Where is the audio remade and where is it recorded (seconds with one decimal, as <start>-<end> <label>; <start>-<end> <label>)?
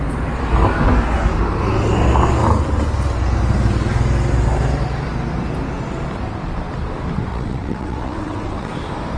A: 0.0-7.3 recorded; 7.3-8.7 remade; 8.7-9.2 recorded